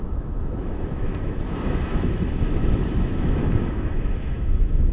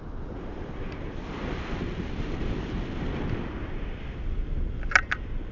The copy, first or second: first